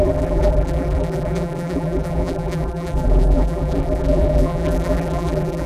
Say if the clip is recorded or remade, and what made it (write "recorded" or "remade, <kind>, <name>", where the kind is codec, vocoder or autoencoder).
remade, vocoder, BigVGAN v2